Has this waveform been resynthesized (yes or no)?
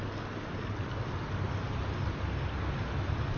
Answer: no